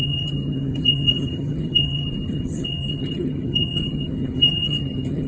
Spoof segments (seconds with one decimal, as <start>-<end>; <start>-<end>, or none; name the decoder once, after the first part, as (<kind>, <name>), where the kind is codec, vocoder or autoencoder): 0.0-5.3 (vocoder, HiFi-GAN)